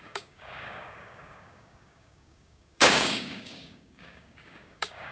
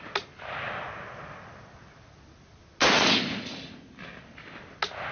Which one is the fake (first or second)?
first